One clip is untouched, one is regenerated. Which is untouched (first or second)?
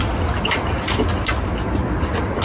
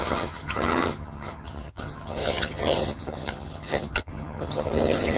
first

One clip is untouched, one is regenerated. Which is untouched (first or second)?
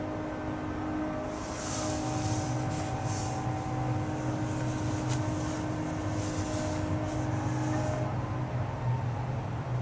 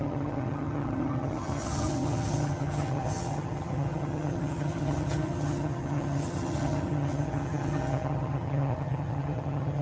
first